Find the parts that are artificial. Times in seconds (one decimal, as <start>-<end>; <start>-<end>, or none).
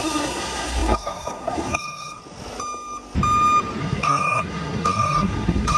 0.0-2.2; 3.8-5.8